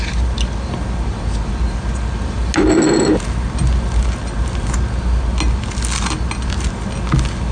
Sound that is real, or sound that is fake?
real